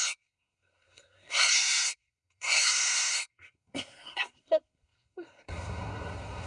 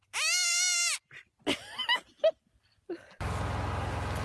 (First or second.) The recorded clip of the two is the second